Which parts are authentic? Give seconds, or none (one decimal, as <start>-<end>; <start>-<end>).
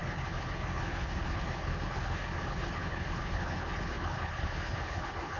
none